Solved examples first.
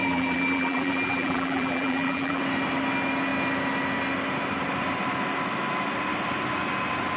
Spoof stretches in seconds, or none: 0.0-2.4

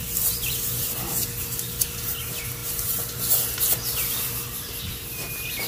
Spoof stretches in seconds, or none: none

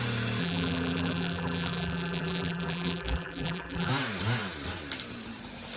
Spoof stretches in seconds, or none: 0.4-3.9

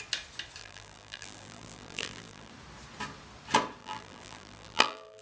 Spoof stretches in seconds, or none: 0.6-2.5; 3.8-5.2

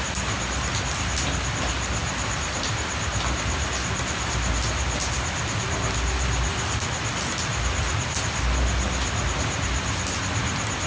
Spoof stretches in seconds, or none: none

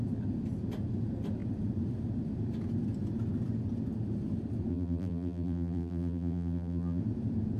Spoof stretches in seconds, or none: 4.7-7.0

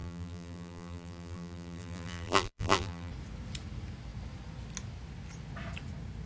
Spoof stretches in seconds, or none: 0.0-3.1